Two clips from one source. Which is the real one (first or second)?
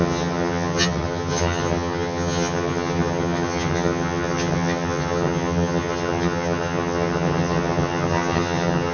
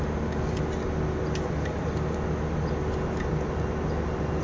second